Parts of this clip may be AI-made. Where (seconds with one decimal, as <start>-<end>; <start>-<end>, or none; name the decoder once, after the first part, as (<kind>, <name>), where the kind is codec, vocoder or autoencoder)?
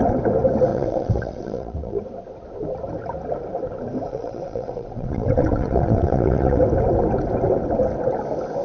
0.7-2.0 (vocoder, WaveNeXt); 4.1-6.6